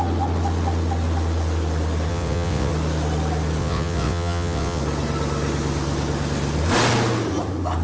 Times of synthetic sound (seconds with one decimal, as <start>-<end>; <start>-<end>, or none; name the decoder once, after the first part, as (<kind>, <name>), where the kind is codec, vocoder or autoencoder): 2.1-2.7 (vocoder, WaveNeXt); 3.6-4.8